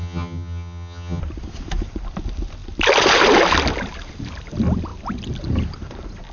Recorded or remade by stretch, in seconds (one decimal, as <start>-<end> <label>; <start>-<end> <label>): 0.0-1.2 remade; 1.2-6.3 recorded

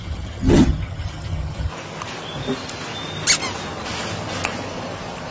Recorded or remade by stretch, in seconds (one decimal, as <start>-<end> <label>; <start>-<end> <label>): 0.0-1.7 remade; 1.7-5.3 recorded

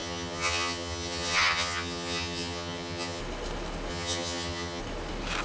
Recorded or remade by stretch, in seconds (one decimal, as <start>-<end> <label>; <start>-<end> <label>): 0.0-3.2 remade; 3.2-3.9 recorded; 3.9-4.8 remade; 4.8-5.4 recorded

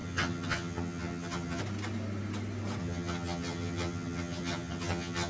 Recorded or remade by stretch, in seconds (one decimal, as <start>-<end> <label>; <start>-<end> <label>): 0.0-1.6 remade; 1.6-2.8 recorded; 2.8-5.3 remade

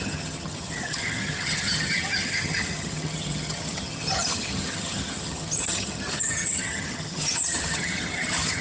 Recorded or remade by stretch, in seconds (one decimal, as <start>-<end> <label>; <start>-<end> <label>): 0.0-8.6 remade

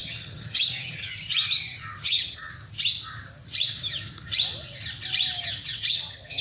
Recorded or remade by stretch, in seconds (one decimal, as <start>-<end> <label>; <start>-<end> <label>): 0.0-1.1 remade; 1.1-2.0 recorded; 2.0-2.5 remade; 2.5-5.9 recorded; 5.9-6.4 remade

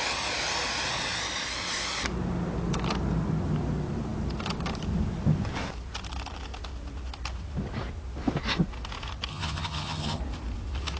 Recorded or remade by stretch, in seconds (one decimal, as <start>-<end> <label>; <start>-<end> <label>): 0.0-9.3 recorded; 9.3-10.2 remade; 10.2-11.0 recorded

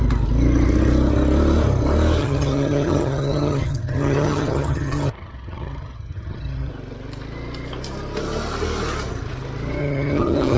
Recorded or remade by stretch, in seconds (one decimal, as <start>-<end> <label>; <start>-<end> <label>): 0.0-2.2 recorded; 2.2-6.7 remade; 6.7-9.8 recorded; 9.8-10.6 remade